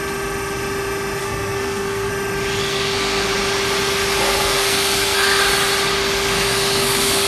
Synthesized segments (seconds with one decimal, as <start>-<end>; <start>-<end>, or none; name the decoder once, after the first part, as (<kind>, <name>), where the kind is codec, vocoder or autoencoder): 1.2-2.1 (codec, SNAC); 2.6-3.3; 4.3-5.4; 6.0-7.3